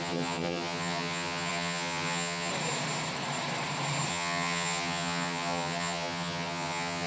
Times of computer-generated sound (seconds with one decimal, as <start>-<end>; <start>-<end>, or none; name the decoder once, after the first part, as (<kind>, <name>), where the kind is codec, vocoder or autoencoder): 0.0-2.5 (vocoder, HiFi-GAN); 4.1-7.1